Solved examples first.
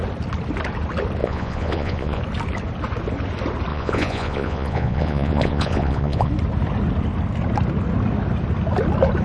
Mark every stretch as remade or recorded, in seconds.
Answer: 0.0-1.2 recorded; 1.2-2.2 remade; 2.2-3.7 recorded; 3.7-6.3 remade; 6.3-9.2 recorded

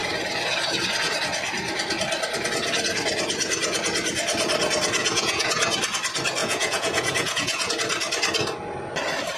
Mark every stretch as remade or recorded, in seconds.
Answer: 0.0-5.0 recorded; 5.0-5.8 remade; 5.8-6.4 recorded; 6.4-7.7 remade; 7.7-9.4 recorded

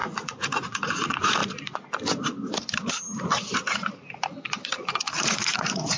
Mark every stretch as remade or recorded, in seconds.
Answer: 0.0-1.4 remade; 1.4-5.0 recorded; 5.0-6.0 remade

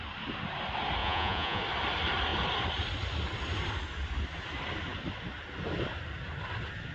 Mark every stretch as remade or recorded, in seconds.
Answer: 0.0-1.0 recorded; 1.0-1.6 remade; 1.6-6.9 recorded

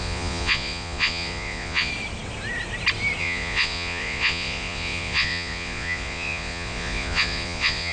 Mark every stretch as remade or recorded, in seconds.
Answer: 0.0-1.9 remade; 1.9-3.2 recorded; 3.2-7.9 remade

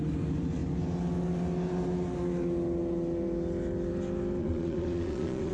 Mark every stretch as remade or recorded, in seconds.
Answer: 0.0-4.4 recorded; 4.4-5.5 remade

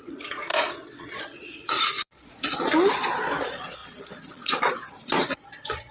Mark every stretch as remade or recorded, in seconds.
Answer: 0.0-3.8 remade; 3.8-4.3 recorded; 4.3-5.9 remade